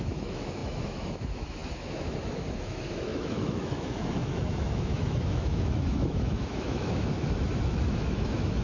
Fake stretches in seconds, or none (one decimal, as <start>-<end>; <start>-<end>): 0.0-8.6